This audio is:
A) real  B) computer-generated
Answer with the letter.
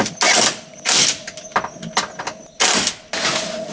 A